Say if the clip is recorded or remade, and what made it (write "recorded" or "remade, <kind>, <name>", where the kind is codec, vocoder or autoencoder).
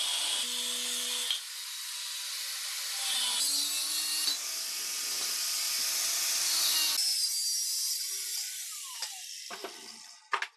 recorded